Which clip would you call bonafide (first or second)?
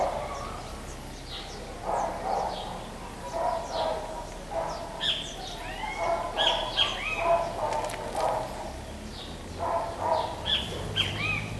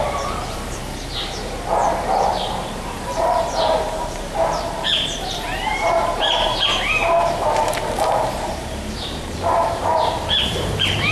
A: first